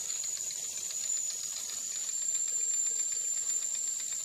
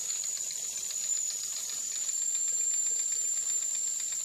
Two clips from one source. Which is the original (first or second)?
second